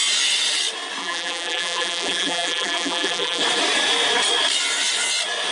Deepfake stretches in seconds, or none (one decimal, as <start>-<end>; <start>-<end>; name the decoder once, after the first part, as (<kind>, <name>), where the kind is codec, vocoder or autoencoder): 1.0-3.4 (vocoder, BigVGAN v2)